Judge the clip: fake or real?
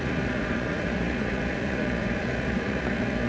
fake